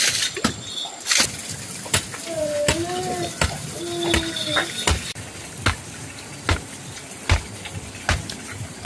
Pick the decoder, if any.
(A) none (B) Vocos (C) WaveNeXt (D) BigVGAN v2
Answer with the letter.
A